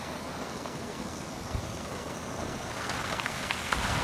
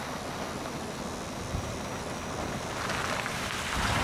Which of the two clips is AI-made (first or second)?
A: first